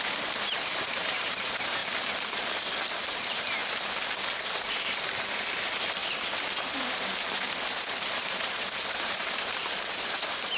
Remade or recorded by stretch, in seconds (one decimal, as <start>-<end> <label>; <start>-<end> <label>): 0.0-1.8 remade; 1.8-3.0 recorded; 3.0-3.6 remade; 3.6-4.5 recorded; 4.5-10.6 remade